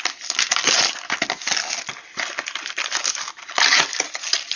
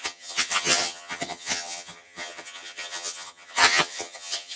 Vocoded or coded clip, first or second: second